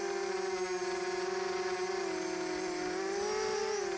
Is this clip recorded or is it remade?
recorded